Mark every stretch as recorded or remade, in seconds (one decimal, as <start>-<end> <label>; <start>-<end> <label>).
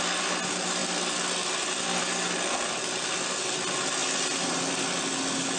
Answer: 0.0-4.0 recorded; 4.0-4.7 remade; 4.7-5.6 recorded